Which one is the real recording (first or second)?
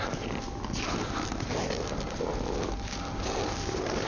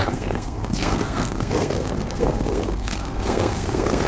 first